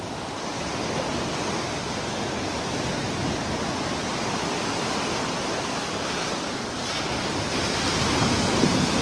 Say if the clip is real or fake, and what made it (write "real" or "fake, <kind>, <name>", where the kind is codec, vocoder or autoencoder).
real